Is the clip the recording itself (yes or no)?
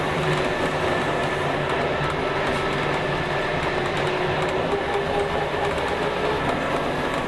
yes